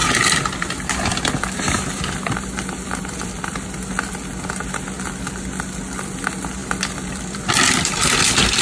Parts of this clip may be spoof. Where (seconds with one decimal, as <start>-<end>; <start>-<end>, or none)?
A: 0.0-3.6; 6.6-8.6